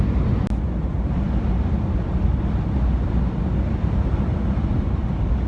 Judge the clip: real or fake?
real